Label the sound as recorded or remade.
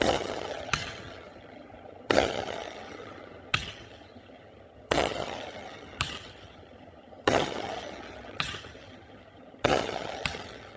remade